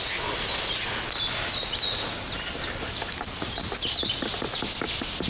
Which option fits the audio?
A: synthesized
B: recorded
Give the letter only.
B